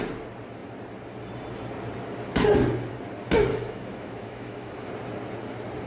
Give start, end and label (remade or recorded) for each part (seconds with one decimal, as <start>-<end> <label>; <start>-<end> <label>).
0.0-3.5 recorded; 3.5-4.9 remade; 4.9-5.9 recorded